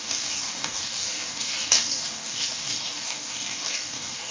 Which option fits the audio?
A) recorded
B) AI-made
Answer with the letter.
B